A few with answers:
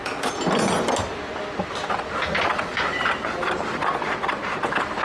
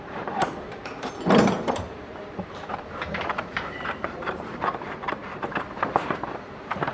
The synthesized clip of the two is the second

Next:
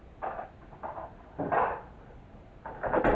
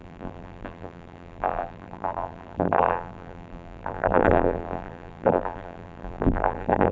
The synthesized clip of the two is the second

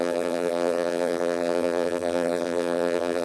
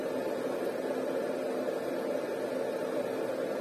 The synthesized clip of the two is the first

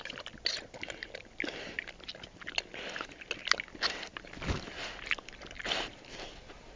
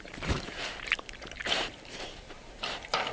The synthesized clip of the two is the second